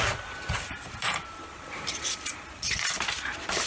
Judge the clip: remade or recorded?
remade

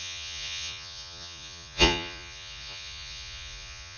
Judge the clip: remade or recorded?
remade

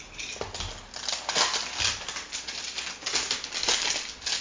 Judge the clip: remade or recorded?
recorded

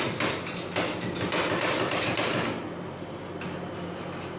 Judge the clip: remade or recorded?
recorded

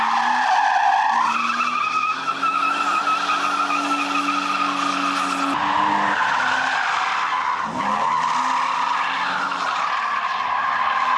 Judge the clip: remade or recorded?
recorded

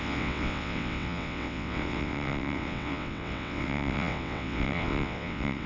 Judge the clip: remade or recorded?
remade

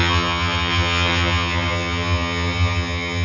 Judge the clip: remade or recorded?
remade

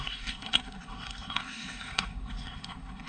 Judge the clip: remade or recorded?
remade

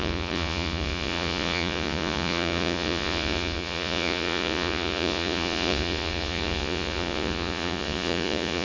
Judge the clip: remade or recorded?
remade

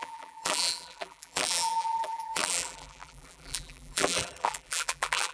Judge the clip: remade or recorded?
remade